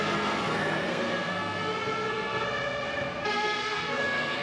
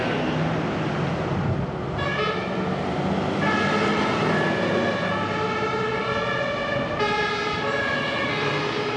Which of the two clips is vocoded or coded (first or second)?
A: first